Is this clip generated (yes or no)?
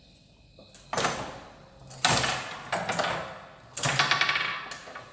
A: no